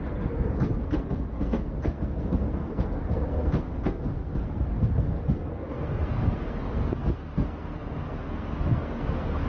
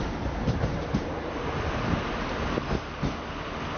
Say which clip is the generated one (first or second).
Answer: first